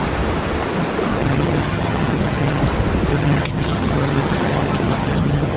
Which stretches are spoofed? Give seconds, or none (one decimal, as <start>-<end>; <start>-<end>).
1.1-2.6; 3.1-5.6